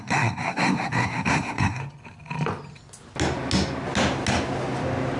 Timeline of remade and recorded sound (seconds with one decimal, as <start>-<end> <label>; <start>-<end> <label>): 0.0-1.8 remade; 1.8-5.2 recorded